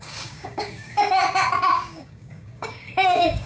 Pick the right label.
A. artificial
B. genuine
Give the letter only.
A